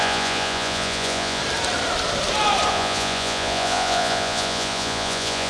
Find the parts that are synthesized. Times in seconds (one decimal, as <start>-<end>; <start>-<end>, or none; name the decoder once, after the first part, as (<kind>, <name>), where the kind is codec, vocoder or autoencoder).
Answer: 0.0-1.4 (vocoder, Vocos); 2.7-5.5